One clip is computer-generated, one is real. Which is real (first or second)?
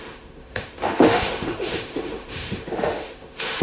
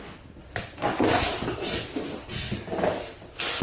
second